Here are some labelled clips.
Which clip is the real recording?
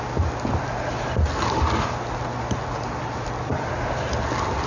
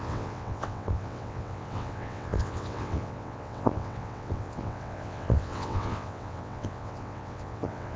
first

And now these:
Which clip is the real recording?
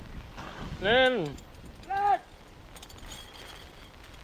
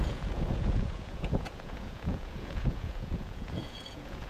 first